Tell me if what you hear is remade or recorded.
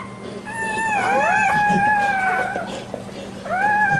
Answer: recorded